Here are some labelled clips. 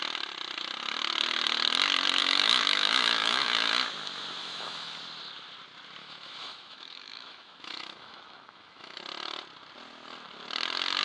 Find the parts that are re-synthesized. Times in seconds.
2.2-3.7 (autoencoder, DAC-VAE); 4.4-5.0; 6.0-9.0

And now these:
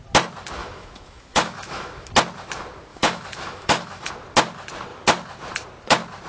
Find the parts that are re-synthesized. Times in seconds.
0.6-2.1 (autoencoder, DAC-VAE); 2.9-4.1

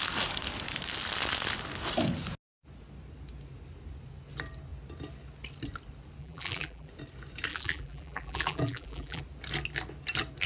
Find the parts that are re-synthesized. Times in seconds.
6.2-6.9 (vocoder, BigVGAN v2); 7.5-9.2

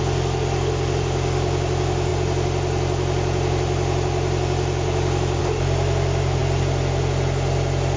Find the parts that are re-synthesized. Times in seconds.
none

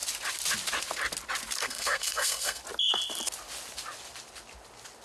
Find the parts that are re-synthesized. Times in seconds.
1.6-2.6 (codec, SNAC)

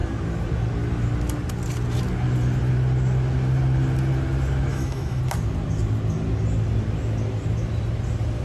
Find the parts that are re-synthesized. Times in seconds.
4.7-5.2 (autoencoder, DAC-VAE)

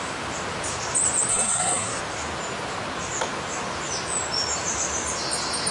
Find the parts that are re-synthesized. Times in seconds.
1.3-2.0 (codec, SNAC)